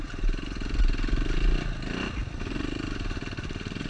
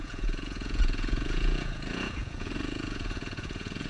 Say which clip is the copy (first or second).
second